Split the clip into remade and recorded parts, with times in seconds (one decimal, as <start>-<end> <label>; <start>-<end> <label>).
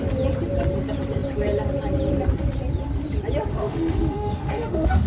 0.0-3.5 recorded; 3.5-5.1 remade